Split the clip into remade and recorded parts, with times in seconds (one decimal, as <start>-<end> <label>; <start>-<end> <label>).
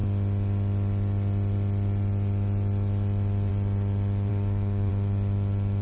0.0-4.3 recorded; 4.3-4.9 remade; 4.9-5.8 recorded